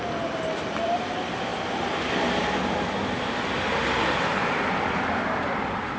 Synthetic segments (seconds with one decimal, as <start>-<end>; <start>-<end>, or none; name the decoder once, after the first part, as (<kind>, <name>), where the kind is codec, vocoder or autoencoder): 0.0-6.0 (vocoder, BigVGAN v2)